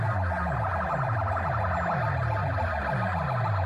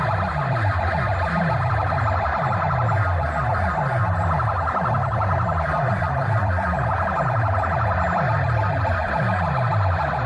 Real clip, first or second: first